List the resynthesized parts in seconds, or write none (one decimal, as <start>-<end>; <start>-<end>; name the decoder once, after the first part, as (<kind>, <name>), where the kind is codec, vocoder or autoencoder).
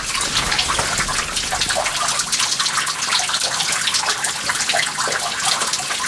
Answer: none